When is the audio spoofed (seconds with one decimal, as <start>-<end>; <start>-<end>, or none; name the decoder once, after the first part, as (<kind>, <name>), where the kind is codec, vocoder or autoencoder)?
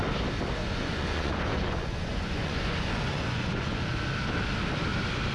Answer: 0.6-3.8 (vocoder, Vocos)